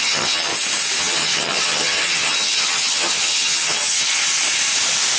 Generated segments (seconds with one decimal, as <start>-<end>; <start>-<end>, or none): 0.0-0.5; 1.0-4.2

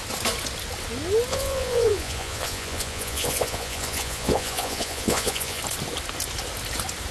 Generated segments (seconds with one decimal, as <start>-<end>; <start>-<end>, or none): 1.3-5.6

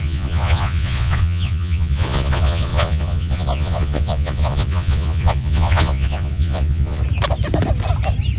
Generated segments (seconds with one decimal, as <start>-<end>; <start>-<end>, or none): 0.0-7.0

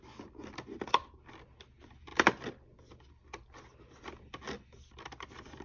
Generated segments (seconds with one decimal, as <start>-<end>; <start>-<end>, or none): none

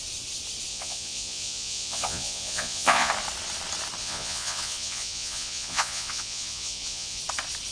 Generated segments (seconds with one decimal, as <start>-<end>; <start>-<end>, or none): 0.7-3.1; 4.0-7.2

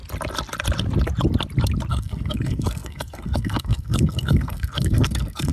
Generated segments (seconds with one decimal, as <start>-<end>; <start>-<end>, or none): 1.9-5.5

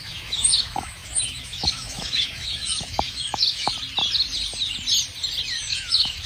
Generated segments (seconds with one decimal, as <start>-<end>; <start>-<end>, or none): 0.0-3.7; 5.6-6.3

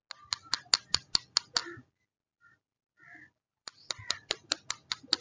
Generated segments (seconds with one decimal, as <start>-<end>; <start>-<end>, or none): 1.6-4.7